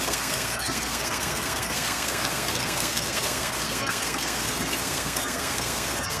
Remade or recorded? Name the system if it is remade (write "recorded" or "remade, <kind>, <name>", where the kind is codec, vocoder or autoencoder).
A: remade, codec, SNAC